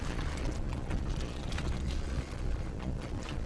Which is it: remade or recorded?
remade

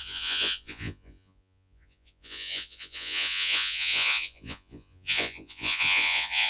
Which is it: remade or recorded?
remade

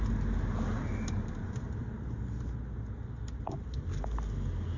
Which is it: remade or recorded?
recorded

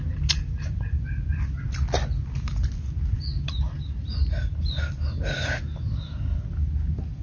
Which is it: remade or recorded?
recorded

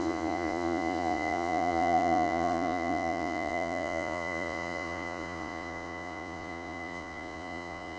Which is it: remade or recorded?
remade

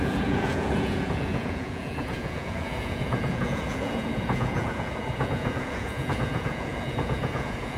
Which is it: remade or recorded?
remade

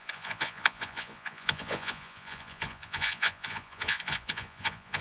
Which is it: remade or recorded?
remade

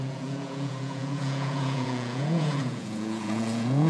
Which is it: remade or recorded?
remade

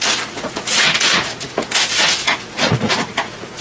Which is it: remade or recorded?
remade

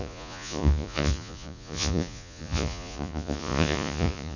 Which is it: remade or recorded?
remade